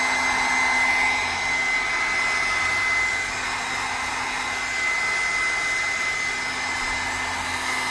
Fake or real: real